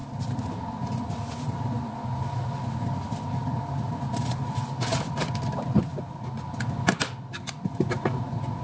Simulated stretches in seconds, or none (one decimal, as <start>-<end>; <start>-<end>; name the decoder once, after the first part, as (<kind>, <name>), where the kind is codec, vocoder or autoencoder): none